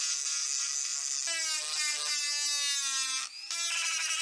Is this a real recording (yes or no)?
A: yes